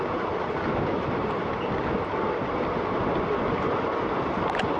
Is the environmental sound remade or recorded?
recorded